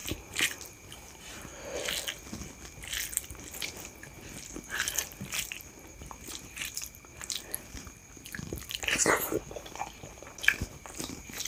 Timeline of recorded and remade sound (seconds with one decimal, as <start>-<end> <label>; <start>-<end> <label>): 0.0-1.5 remade; 1.5-4.8 recorded; 4.8-8.0 remade; 8.0-10.9 recorded; 10.9-11.5 remade